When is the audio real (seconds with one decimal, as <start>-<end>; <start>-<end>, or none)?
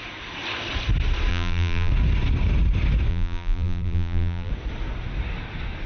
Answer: 0.0-1.3; 1.9-3.1; 4.5-5.9